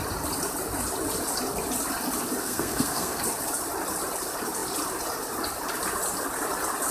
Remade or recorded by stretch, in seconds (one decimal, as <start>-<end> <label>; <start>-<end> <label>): 0.0-2.4 recorded; 2.4-3.2 remade; 3.2-6.9 recorded